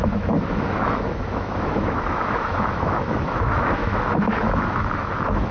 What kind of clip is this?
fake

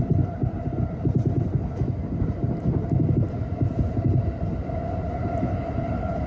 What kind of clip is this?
real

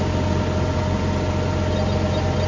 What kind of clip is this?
real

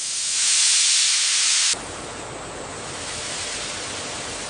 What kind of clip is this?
real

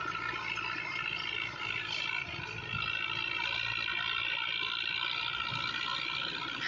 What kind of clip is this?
real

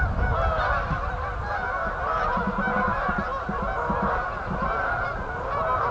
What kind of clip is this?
real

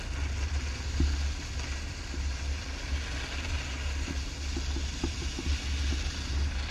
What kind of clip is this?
real